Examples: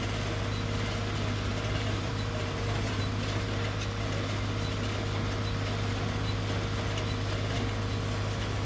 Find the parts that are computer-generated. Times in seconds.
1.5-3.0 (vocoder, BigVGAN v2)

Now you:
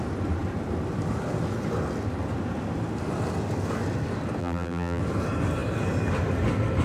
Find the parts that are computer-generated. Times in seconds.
4.4-5.0 (vocoder, BigVGAN v2)

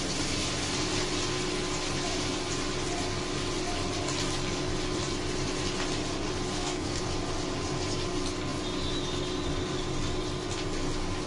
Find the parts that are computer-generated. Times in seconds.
6.5-7.0 (codec, SNAC)

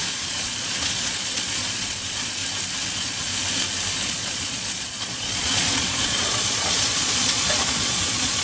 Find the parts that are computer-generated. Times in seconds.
0.0-2.4 (vocoder, Vocos); 2.9-3.3; 4.0-8.4

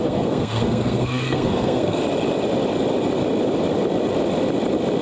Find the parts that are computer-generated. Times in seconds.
0.0-2.0 (codec, SNAC)